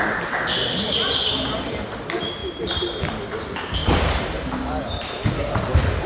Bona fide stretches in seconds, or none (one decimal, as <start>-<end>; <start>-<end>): 0.0-2.4; 3.4-3.8; 5.3-6.1